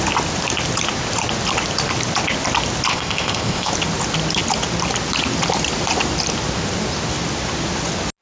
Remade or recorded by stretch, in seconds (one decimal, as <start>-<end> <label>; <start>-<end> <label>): 0.0-2.9 recorded; 2.9-3.7 remade; 3.7-8.2 recorded